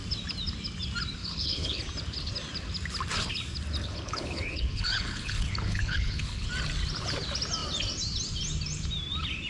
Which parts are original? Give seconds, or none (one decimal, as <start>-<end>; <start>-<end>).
0.0-1.2; 1.8-3.8; 6.5-9.5